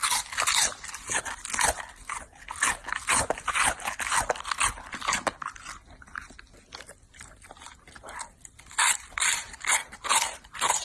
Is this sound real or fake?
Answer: real